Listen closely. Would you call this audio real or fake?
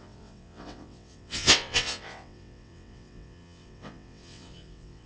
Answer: fake